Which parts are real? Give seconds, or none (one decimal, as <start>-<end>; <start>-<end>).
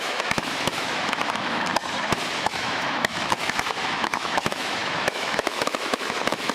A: 1.7-2.4